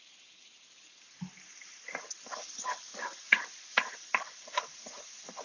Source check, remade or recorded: remade